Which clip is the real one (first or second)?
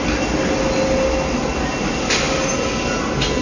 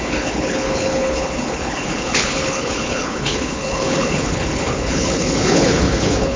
first